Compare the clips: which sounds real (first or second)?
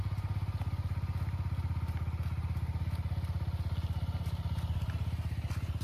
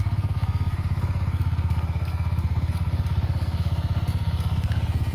first